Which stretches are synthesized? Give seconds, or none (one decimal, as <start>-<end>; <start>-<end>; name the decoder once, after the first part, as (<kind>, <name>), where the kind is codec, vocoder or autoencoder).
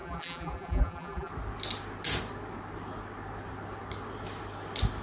0.0-1.3 (vocoder, BigVGAN v2)